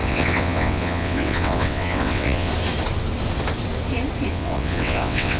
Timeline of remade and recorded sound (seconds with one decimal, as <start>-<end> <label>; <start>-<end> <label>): 0.0-2.5 remade; 2.5-4.3 recorded; 4.3-5.4 remade